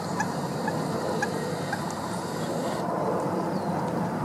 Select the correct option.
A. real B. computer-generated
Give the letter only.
B